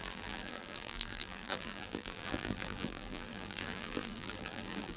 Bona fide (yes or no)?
no